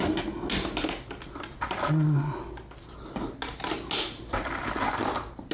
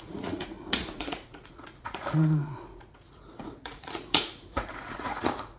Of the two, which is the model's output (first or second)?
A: second